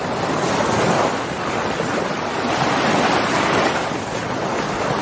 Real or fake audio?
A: real